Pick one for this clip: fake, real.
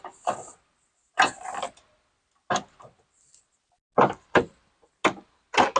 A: real